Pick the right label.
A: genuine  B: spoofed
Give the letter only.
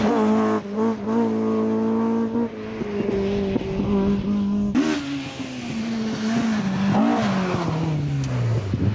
A